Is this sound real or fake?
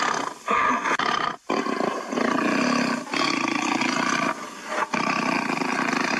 real